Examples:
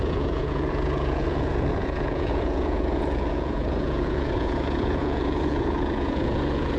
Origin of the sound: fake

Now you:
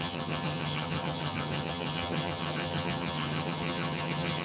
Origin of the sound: fake